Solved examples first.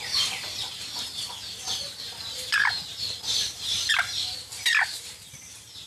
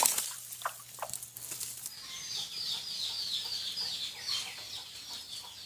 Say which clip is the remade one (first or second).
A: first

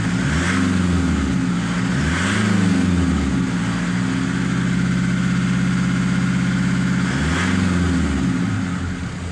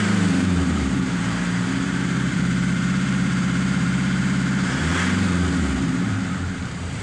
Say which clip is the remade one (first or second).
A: second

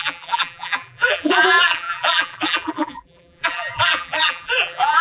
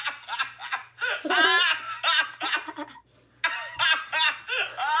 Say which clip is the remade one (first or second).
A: first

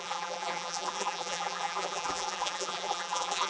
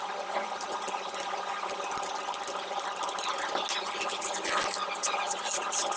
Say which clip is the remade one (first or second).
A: first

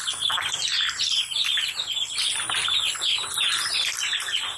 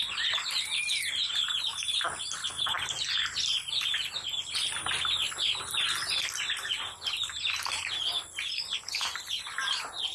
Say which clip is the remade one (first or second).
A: first